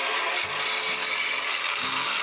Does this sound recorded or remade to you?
recorded